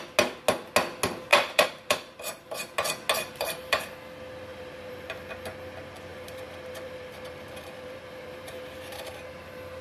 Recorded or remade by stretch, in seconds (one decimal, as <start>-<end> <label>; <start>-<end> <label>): 0.0-1.3 recorded; 1.3-2.7 remade; 2.7-3.2 recorded; 3.2-3.9 remade; 3.9-4.5 recorded; 4.5-5.3 remade; 5.3-6.1 recorded; 6.1-9.8 remade